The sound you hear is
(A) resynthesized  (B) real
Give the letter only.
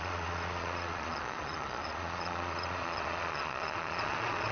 A